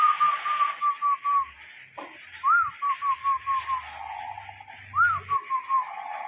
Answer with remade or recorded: recorded